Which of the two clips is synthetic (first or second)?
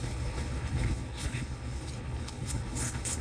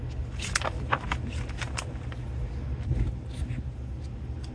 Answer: first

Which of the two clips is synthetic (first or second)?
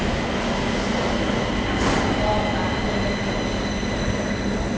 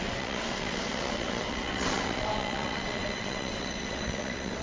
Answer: second